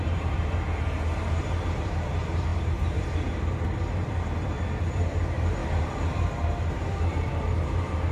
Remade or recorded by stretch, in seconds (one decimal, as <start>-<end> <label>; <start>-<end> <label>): 0.0-8.1 remade